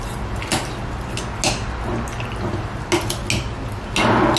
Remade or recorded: recorded